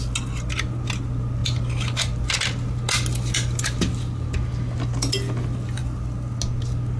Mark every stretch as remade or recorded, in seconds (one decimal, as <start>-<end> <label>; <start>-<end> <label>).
0.0-7.0 recorded